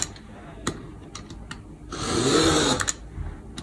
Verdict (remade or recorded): recorded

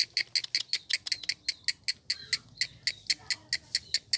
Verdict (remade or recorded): recorded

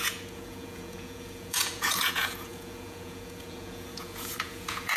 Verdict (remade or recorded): remade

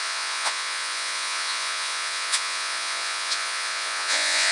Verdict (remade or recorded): remade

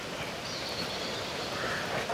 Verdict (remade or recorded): recorded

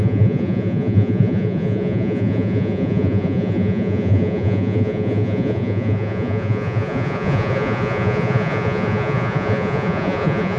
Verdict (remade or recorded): remade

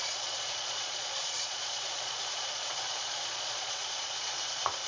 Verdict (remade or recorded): remade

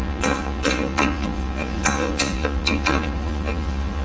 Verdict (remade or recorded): remade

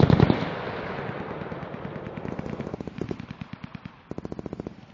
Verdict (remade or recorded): recorded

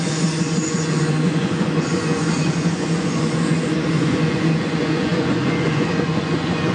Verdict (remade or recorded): remade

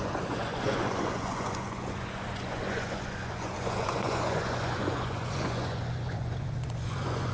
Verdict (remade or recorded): remade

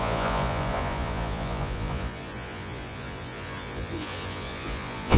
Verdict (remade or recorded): remade